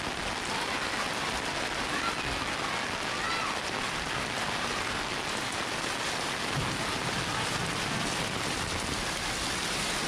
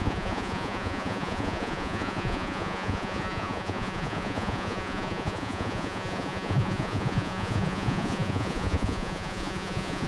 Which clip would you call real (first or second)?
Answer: first